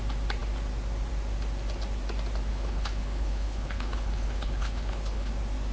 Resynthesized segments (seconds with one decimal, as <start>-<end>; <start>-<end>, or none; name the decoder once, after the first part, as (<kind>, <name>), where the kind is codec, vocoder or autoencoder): 2.5-5.3 (codec, HILCodec)